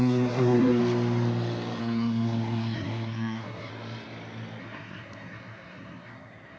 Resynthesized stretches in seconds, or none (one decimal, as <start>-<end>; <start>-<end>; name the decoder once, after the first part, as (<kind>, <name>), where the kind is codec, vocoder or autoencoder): 0.0-0.8 (codec, SNAC); 1.8-3.7; 4.6-6.6